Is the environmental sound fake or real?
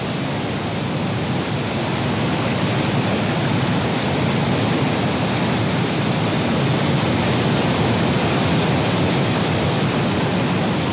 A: real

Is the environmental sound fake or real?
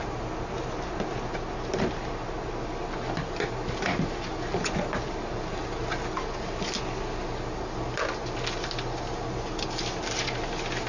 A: real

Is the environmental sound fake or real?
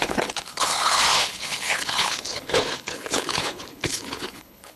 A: fake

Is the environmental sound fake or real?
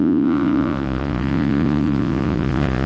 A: fake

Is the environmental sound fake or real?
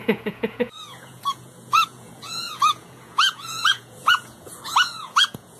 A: fake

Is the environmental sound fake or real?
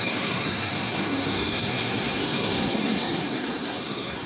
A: fake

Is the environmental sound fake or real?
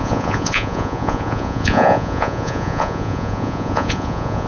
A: fake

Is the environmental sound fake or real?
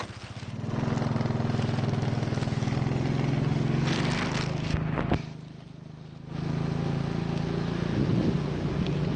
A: real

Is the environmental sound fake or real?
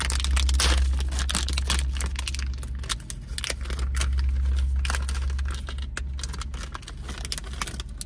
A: real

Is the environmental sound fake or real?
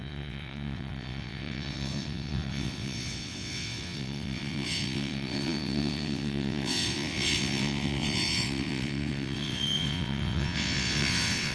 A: fake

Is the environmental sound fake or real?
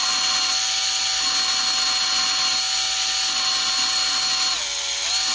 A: real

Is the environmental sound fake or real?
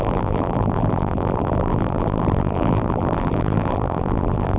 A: fake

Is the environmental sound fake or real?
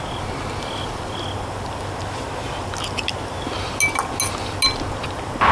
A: real